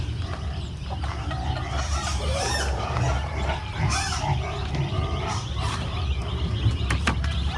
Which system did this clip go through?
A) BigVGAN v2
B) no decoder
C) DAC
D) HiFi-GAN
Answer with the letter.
A